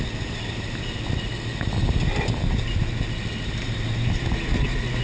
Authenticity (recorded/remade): recorded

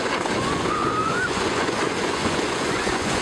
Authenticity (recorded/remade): remade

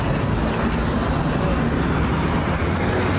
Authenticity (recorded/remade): recorded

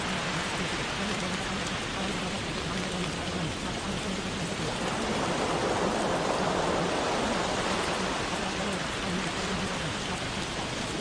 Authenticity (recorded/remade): recorded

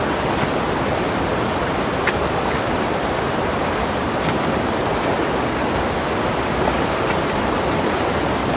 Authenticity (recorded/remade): recorded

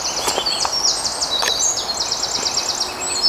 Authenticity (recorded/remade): recorded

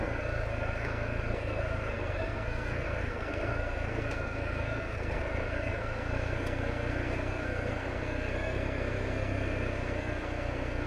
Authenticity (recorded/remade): remade